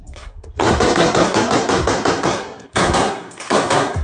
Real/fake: fake